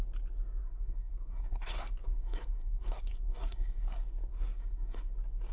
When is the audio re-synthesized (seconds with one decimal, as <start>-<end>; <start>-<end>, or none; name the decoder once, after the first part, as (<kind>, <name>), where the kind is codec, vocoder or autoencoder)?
0.6-3.9 (codec, SNAC); 4.3-5.1